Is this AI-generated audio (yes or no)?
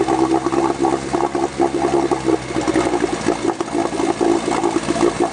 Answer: no